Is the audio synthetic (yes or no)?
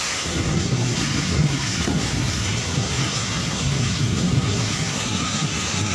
yes